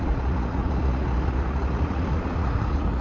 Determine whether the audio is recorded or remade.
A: remade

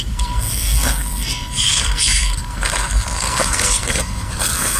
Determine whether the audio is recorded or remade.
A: remade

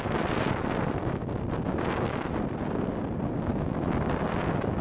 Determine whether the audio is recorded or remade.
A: recorded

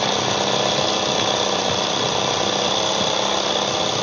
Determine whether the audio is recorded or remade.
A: recorded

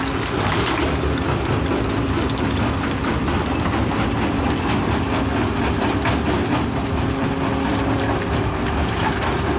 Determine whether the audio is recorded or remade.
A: recorded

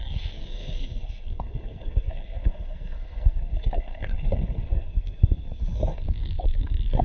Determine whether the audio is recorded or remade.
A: remade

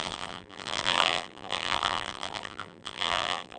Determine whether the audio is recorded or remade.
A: remade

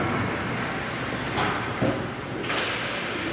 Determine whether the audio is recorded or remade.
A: recorded